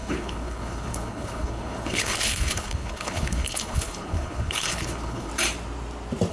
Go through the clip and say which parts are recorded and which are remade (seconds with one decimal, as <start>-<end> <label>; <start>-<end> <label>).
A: 0.0-5.3 remade; 5.3-6.3 recorded